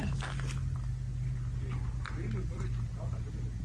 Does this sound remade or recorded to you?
recorded